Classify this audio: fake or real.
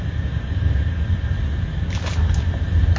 real